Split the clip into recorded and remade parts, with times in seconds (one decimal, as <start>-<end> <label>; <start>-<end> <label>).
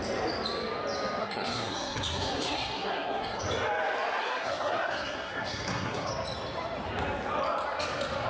0.0-1.2 recorded; 1.2-3.4 remade; 3.4-4.2 recorded; 4.2-6.1 remade; 6.1-8.3 recorded